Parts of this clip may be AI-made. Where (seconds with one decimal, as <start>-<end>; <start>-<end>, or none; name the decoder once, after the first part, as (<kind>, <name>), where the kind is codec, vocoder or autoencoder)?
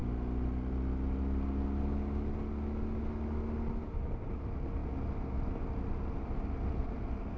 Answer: none